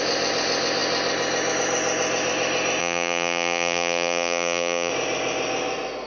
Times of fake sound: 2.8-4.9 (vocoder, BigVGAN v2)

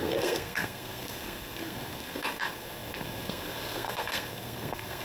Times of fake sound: 0.0-5.0 (codec, SNAC)

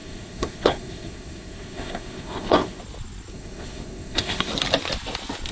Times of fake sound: 0.0-2.8 (codec, SNAC); 3.3-4.5

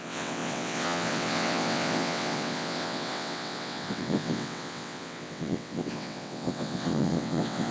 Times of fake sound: 0.0-7.7 (vocoder, WaveNeXt)

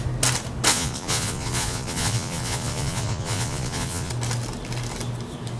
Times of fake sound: 0.7-4.1 (vocoder, Vocos)

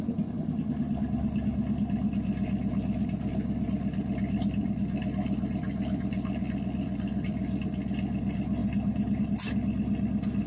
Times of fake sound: 8.6-9.2 (vocoder, BigVGAN v2)

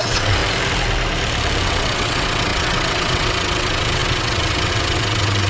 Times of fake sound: 0.0-0.4 (vocoder, WaveNeXt); 1.6-5.5

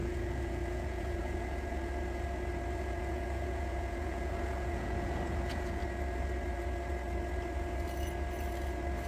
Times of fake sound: 0.0-1.9 (vocoder, Vocos); 2.8-5.8